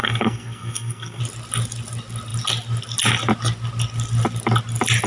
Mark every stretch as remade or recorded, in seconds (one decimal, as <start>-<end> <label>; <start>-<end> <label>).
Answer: 0.0-1.2 remade; 1.2-5.1 recorded